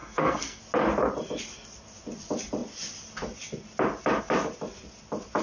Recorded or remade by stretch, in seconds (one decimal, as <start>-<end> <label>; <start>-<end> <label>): 0.0-0.6 remade; 0.6-5.4 recorded